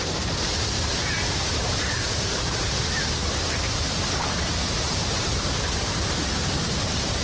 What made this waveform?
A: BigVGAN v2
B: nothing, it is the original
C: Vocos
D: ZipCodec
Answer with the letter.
A